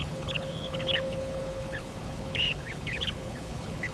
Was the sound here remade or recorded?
remade